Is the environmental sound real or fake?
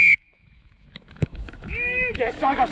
fake